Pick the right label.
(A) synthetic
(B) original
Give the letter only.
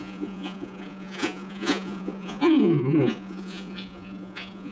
A